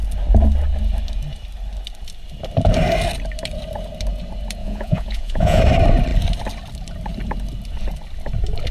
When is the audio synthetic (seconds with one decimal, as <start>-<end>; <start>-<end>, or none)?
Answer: 4.6-5.6